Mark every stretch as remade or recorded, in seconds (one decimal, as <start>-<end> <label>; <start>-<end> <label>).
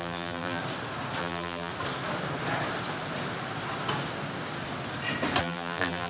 0.0-0.6 remade; 0.6-1.2 recorded; 1.2-1.7 remade; 1.7-5.4 recorded; 5.4-6.1 remade